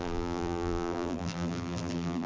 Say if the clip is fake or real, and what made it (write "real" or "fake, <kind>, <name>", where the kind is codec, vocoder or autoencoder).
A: fake, vocoder, BigVGAN v2